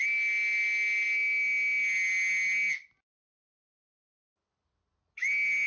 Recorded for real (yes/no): yes